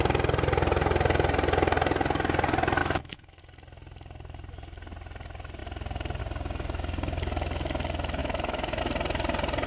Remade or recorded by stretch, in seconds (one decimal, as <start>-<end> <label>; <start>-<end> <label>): 0.0-2.8 recorded; 2.8-3.4 remade; 3.4-8.2 recorded; 8.2-8.8 remade; 8.8-9.7 recorded